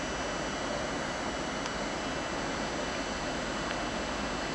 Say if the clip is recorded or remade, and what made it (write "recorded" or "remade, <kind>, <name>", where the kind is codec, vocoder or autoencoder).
recorded